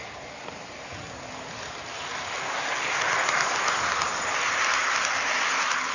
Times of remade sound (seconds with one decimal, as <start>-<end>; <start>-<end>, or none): none